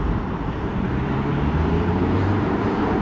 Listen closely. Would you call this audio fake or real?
fake